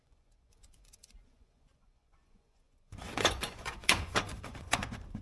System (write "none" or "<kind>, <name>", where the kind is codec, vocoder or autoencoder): vocoder, Vocos